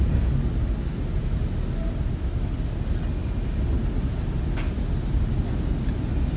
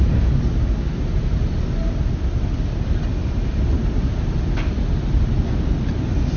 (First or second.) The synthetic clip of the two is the second